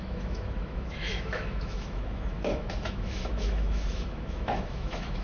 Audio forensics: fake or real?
fake